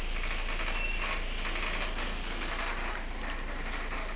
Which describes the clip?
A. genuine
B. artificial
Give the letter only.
A